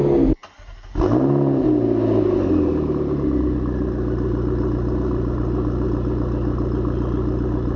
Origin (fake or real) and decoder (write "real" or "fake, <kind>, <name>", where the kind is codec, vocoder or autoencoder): real